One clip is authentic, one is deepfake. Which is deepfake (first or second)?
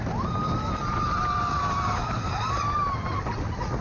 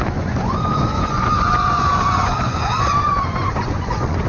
second